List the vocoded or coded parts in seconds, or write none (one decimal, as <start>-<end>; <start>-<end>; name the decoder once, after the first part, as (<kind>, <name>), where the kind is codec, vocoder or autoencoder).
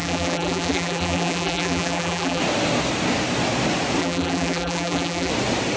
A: 0.0-2.4 (vocoder, BigVGAN v2); 4.0-5.3